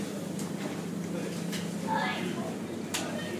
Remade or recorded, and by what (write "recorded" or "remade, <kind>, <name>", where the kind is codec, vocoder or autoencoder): recorded